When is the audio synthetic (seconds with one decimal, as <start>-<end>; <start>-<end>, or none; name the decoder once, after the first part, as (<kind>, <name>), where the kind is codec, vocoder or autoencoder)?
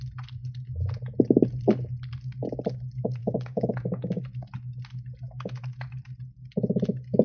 3.2-4.2 (codec, DAC)